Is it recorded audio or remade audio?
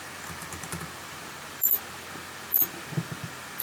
remade